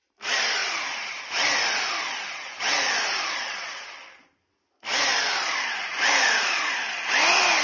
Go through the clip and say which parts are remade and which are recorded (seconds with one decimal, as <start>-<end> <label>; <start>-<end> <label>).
0.0-7.6 recorded